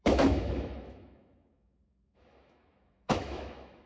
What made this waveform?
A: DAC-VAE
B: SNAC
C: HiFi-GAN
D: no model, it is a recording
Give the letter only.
A